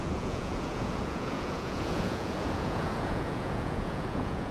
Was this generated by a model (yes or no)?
yes